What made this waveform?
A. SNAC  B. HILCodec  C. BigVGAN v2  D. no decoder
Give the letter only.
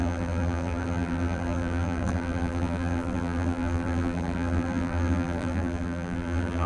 C